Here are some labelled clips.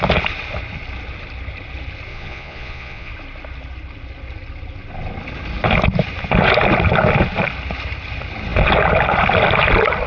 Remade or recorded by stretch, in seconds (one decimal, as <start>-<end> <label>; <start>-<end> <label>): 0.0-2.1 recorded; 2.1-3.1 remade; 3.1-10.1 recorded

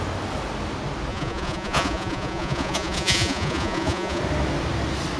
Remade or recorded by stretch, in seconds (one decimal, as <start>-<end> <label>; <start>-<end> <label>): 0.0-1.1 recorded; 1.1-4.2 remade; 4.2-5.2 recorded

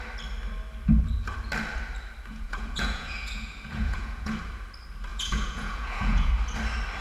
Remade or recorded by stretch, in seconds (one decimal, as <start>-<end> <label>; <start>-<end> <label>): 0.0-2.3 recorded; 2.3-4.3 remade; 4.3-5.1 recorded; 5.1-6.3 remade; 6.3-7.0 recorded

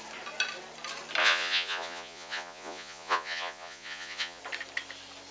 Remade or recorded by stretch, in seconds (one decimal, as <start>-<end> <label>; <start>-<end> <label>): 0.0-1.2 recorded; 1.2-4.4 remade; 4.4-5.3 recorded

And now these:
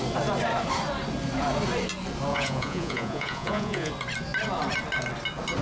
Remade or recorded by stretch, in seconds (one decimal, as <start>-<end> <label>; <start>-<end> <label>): 0.0-2.3 recorded; 2.3-3.9 remade; 3.9-5.6 recorded